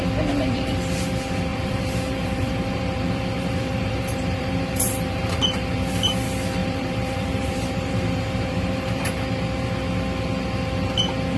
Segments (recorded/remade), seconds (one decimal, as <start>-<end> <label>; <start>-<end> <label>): 0.0-1.5 recorded; 1.5-5.9 remade; 5.9-6.6 recorded; 6.6-9.1 remade; 9.1-11.4 recorded